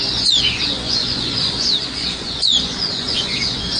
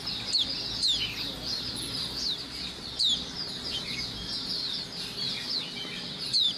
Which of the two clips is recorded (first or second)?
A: second